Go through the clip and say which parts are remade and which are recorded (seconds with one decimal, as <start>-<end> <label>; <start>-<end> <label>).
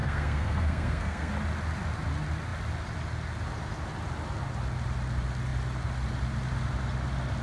0.0-1.3 remade; 1.3-7.4 recorded